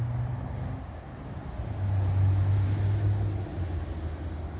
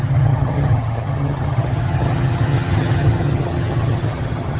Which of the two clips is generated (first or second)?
second